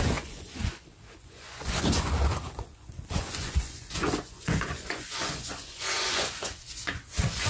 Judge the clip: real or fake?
fake